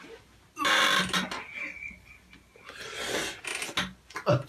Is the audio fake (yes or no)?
no